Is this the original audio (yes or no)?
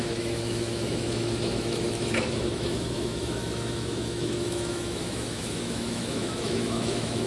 no